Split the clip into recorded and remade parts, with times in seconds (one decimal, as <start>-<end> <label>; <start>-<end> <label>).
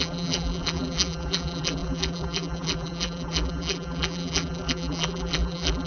0.0-5.9 remade